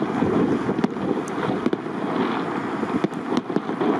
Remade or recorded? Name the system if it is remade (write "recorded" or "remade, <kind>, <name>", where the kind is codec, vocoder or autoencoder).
recorded